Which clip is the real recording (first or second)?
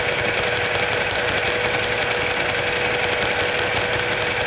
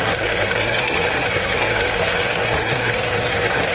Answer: first